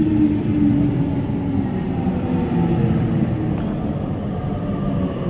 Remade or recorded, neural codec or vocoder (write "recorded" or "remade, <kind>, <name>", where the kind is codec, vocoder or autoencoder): recorded